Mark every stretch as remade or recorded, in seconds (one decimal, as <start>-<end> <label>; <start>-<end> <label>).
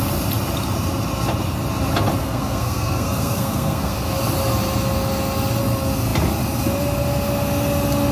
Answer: 0.0-2.2 recorded; 2.2-4.0 remade; 4.0-8.1 recorded